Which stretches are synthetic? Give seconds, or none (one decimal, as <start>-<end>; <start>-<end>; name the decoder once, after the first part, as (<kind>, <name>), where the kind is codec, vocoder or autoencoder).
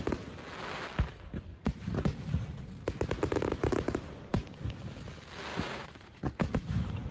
1.5-2.7 (vocoder, Vocos); 5.5-6.3